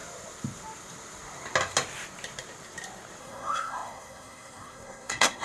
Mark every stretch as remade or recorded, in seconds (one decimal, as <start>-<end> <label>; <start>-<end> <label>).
0.0-3.2 recorded; 3.2-5.4 remade

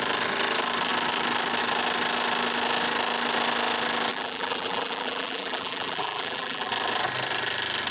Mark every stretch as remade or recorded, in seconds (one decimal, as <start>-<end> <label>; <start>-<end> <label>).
0.0-4.1 recorded; 4.1-6.7 remade; 6.7-7.9 recorded

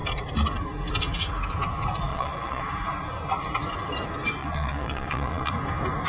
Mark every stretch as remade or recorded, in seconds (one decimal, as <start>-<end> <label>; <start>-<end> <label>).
0.0-2.1 recorded; 2.1-2.6 remade; 2.6-4.4 recorded; 4.4-5.5 remade; 5.5-6.1 recorded

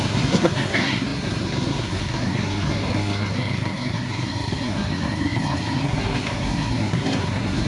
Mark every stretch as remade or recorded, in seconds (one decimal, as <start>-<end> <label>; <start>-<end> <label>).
0.0-7.7 remade